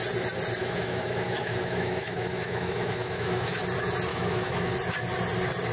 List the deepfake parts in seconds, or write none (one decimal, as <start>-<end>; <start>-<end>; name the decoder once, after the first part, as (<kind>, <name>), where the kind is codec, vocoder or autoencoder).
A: 0.6-3.6 (autoencoder, DAC-VAE); 4.1-4.7